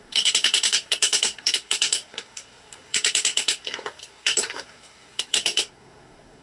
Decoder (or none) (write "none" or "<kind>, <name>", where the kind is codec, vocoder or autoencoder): codec, SNAC